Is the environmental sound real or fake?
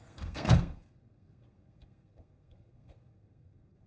fake